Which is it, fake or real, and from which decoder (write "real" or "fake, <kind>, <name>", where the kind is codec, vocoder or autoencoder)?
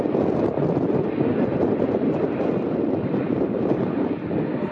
real